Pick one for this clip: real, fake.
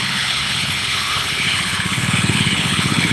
fake